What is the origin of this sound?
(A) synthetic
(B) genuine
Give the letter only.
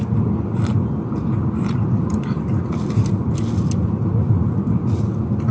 B